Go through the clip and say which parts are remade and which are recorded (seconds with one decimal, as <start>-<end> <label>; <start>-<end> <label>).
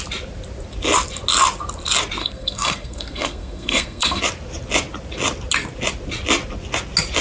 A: 0.0-2.2 recorded; 2.2-4.2 remade; 4.2-7.2 recorded